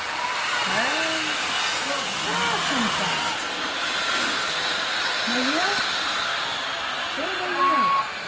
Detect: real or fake real